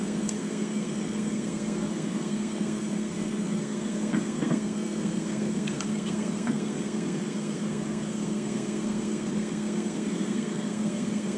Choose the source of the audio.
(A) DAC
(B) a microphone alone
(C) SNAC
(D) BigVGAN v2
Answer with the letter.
C